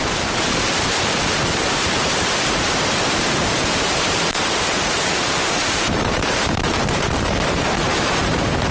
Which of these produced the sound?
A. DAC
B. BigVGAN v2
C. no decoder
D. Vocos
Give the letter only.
B